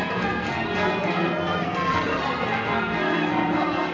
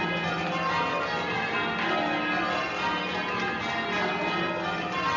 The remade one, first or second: first